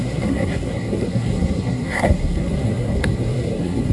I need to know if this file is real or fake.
fake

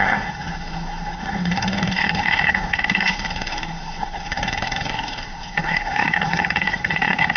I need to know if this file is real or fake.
fake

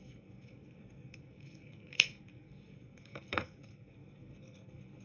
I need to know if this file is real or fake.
fake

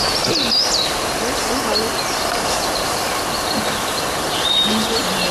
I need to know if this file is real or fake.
real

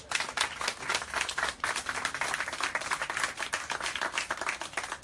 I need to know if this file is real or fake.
fake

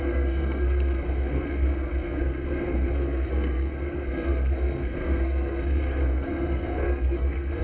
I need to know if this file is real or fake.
fake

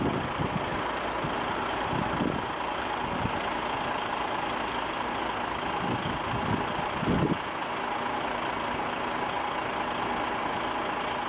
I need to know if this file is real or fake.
real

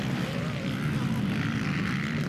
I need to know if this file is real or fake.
real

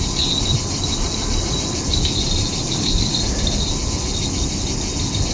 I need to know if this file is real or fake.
real